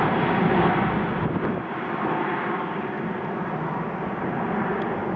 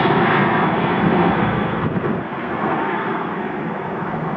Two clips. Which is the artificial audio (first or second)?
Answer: second